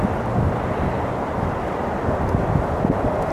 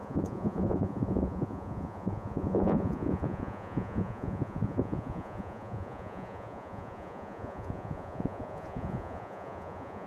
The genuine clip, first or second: first